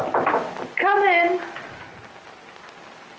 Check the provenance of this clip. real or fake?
real